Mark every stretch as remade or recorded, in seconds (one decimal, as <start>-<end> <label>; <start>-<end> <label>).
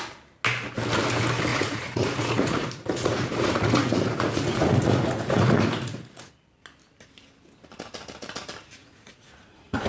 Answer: 0.0-1.5 recorded; 1.5-6.3 remade; 6.3-8.8 recorded; 8.8-9.9 remade